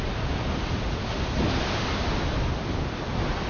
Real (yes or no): yes